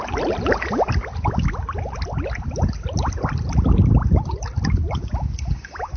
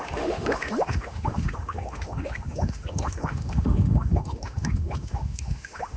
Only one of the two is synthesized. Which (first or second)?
second